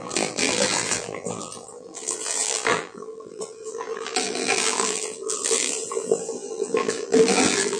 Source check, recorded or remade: remade